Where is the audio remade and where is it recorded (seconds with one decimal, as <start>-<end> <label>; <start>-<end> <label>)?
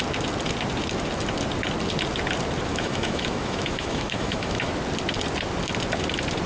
0.0-2.7 recorded; 2.7-4.7 remade; 4.7-6.5 recorded